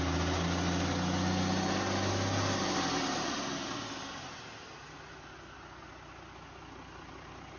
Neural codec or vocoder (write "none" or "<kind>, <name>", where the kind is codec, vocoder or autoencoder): none